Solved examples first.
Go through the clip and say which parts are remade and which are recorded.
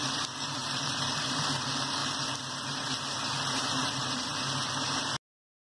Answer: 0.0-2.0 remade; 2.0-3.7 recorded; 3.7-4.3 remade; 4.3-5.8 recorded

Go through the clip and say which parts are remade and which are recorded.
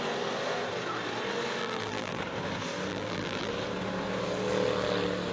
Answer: 0.0-1.6 recorded; 1.6-2.2 remade; 2.2-2.9 recorded; 2.9-3.5 remade; 3.5-5.3 recorded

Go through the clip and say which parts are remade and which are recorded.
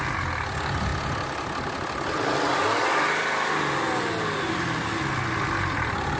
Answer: 0.0-6.2 recorded